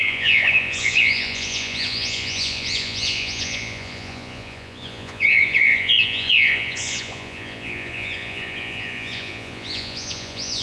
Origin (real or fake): fake